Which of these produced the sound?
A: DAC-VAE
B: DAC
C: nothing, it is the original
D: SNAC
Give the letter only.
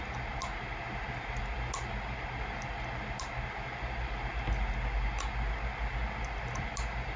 C